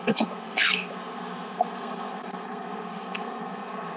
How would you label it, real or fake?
fake